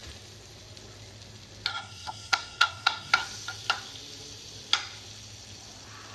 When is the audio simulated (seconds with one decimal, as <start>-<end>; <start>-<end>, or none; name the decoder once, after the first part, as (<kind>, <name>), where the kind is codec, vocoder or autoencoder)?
1.7-3.1 (codec, SNAC)